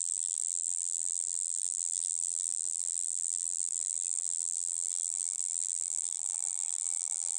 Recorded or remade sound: remade